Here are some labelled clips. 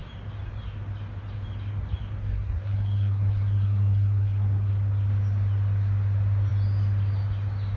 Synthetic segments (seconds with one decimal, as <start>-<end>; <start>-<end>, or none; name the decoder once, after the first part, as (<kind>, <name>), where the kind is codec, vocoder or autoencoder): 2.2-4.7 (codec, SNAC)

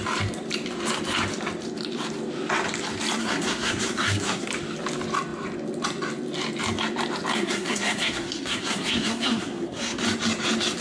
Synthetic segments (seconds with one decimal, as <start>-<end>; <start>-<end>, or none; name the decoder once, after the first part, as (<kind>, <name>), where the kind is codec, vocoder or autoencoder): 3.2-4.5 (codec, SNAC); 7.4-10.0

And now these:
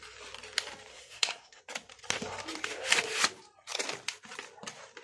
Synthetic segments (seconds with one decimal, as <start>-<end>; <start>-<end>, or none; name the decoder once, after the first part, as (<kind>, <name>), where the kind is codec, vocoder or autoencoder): 0.9-1.6 (codec, SNAC)